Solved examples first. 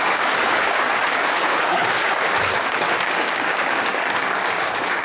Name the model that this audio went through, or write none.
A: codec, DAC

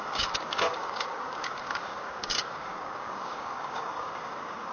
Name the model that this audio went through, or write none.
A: codec, DAC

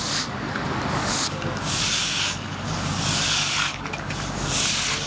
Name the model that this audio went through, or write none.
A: codec, DAC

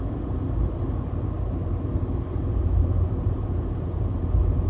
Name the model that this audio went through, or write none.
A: none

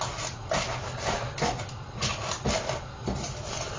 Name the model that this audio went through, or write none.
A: none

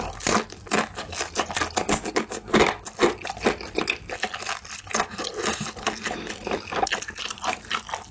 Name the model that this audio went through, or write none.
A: none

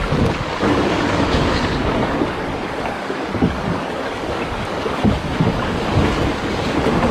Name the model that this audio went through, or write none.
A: codec, DAC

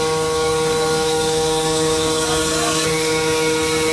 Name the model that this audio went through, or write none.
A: codec, DAC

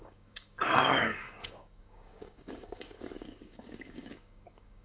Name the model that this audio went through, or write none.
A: codec, DAC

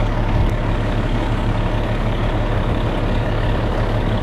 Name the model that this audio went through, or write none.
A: codec, DAC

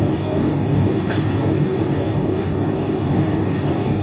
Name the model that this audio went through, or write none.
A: codec, DAC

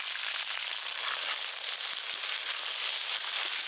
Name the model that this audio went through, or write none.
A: none